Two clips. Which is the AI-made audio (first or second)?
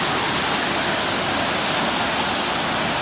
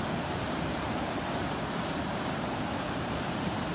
second